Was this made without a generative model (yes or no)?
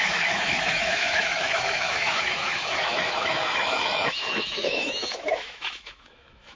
no